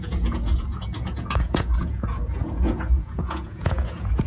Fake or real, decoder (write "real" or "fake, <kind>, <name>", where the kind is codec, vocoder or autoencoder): fake, vocoder, Vocos